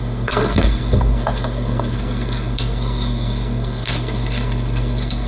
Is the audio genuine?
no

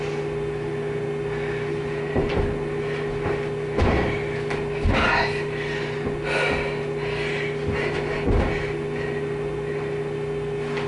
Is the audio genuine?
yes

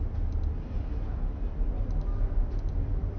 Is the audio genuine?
yes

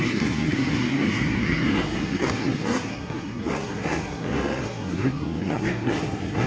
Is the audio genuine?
no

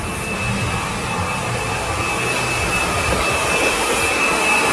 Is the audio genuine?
yes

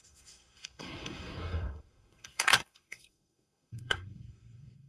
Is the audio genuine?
no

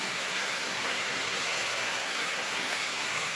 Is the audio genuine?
no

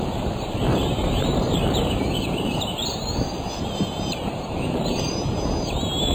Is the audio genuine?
no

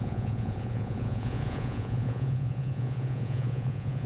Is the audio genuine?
no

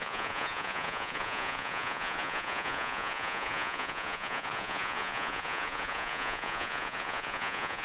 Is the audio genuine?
no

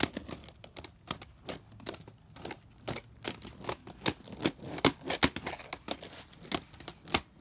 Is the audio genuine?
yes